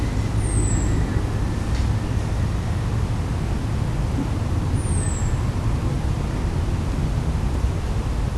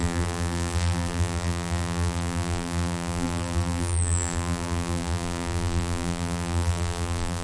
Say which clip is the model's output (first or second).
second